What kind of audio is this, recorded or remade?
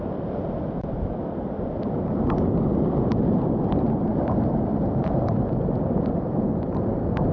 recorded